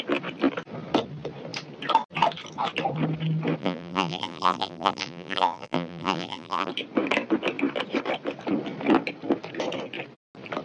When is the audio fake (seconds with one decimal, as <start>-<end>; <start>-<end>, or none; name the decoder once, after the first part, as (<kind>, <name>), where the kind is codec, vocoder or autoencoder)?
3.6-6.7 (vocoder, BigVGAN v2)